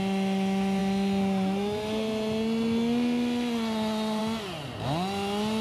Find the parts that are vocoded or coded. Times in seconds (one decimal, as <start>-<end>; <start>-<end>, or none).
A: none